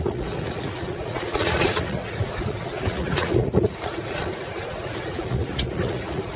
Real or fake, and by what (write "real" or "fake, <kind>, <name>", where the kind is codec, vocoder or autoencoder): fake, vocoder, Vocos